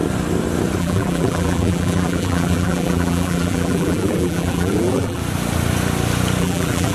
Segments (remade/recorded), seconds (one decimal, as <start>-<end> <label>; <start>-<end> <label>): 0.0-0.8 recorded; 0.8-5.2 remade; 5.2-6.4 recorded; 6.4-6.9 remade